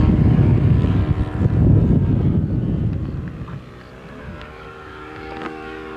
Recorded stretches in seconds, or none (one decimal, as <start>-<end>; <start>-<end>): 1.0-4.2